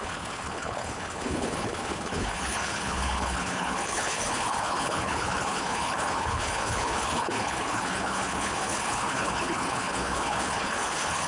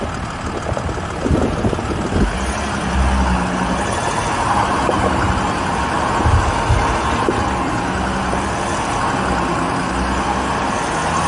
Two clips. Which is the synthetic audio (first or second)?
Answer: first